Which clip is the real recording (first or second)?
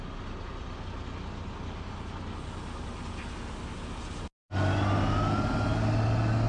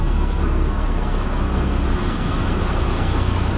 first